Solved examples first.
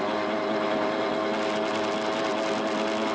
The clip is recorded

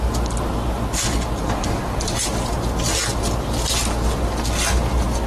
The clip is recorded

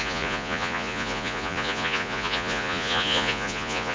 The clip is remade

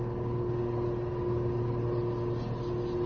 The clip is recorded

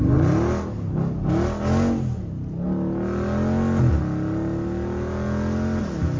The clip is recorded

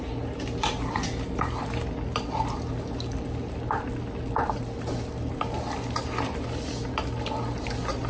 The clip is recorded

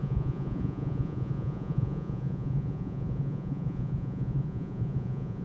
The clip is remade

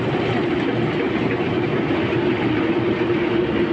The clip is recorded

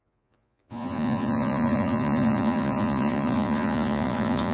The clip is remade